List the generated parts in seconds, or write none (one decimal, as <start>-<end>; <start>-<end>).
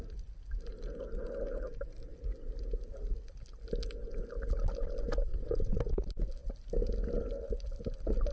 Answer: 5.3-5.8